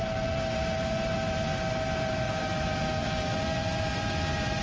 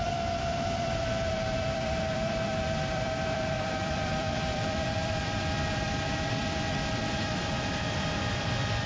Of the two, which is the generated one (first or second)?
second